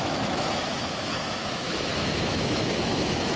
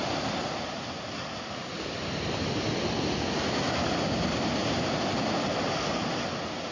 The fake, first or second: first